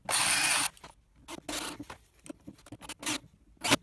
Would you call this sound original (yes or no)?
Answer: yes